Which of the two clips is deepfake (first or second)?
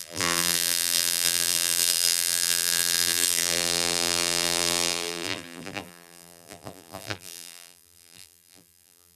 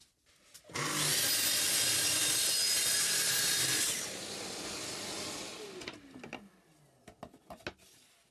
first